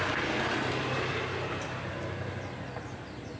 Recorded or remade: recorded